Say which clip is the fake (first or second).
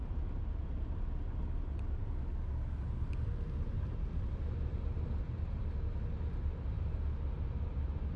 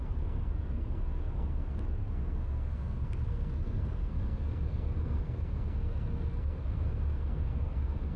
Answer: second